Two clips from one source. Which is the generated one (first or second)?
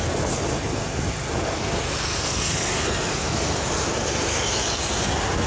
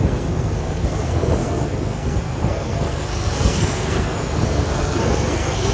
second